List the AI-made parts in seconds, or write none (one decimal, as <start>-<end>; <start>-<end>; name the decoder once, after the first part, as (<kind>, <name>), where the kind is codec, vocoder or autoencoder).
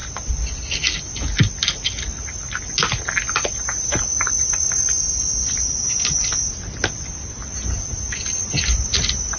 none